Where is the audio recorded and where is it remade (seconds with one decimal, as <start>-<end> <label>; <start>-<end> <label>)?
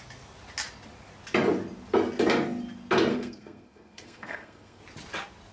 0.0-3.1 recorded; 3.1-4.8 remade; 4.8-5.5 recorded